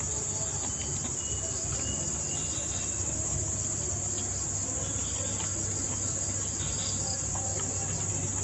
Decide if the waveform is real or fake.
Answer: real